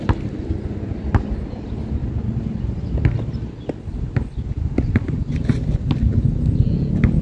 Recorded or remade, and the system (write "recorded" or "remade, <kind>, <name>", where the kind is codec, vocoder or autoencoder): recorded